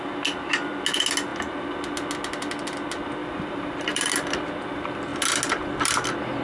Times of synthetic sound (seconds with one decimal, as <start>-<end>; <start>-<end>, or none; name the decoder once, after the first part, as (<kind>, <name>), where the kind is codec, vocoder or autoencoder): 3.2-4.1 (vocoder, BigVGAN v2)